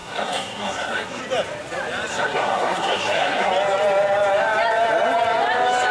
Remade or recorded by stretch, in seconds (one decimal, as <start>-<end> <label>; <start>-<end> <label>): 0.0-1.2 remade; 1.2-2.1 recorded; 2.1-3.5 remade; 3.5-5.9 recorded